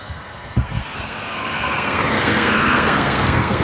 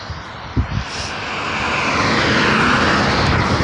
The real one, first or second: second